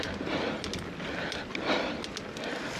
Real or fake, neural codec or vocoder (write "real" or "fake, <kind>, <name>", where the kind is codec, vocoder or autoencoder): real